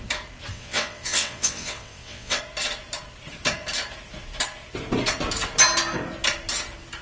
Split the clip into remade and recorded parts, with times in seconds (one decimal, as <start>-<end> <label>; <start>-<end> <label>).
0.0-0.5 recorded; 0.5-2.4 remade; 2.4-7.0 recorded